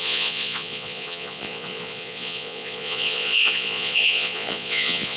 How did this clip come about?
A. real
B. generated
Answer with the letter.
B